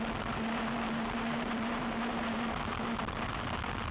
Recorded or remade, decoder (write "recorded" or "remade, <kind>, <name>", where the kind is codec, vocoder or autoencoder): remade, vocoder, BigVGAN v2